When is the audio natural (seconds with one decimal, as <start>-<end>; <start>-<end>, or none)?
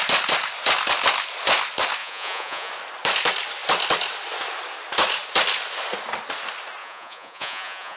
0.0-2.0; 2.7-6.8